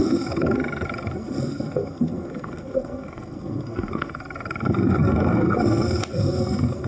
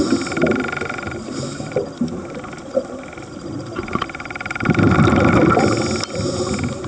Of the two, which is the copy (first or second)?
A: first